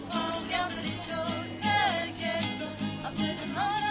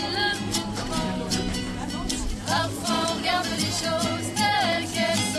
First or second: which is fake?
second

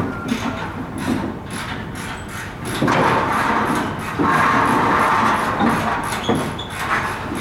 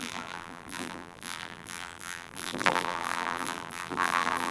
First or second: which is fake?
second